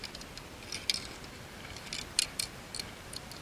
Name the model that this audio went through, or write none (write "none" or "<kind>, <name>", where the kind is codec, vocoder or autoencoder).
none